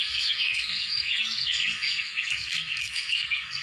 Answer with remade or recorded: remade